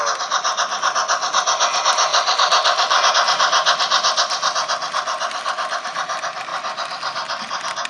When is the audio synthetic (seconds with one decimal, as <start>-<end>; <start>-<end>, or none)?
2.1-3.1